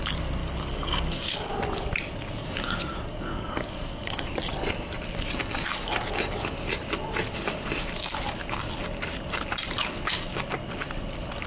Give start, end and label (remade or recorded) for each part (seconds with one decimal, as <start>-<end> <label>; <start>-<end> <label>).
0.0-0.4 recorded; 0.4-1.6 remade; 1.6-3.1 recorded; 3.1-4.3 remade; 4.3-11.5 recorded